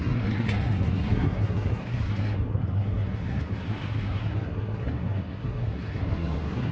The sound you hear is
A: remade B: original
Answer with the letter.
A